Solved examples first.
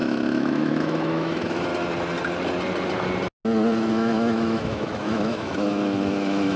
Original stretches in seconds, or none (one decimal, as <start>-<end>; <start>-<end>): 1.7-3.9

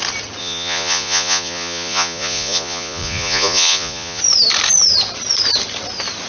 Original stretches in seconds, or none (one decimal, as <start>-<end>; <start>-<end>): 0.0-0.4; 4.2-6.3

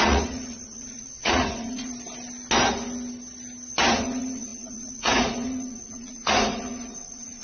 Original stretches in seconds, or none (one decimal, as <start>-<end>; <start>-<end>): 1.9-3.9

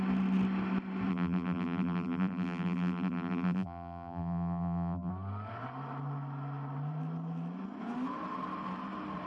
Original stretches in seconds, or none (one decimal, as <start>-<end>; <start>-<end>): 0.0-1.1; 5.1-9.3

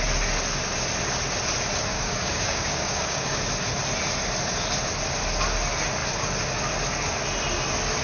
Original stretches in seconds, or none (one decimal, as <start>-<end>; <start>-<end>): 0.0-1.9; 3.4-8.0